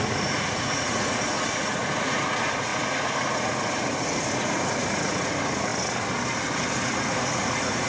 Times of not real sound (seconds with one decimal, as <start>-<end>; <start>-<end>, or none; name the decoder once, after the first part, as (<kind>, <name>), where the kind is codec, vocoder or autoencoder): 0.0-5.7 (vocoder, Vocos); 6.8-7.9